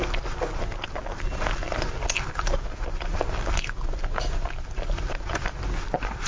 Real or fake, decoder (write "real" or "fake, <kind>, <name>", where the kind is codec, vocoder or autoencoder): real